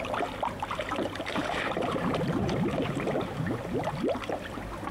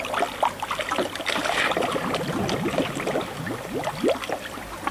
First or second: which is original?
second